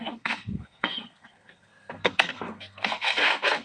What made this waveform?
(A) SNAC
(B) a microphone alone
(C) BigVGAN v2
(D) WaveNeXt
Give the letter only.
A